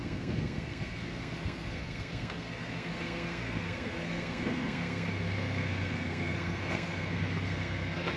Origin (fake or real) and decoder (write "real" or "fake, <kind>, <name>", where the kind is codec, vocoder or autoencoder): fake, codec, SNAC